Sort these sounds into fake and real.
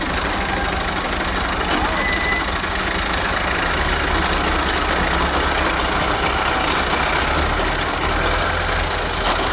real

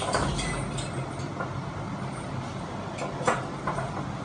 real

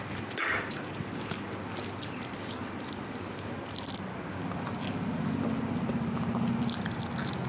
real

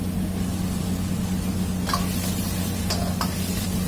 real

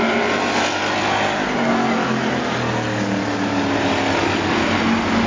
real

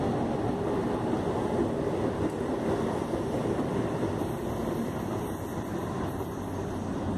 real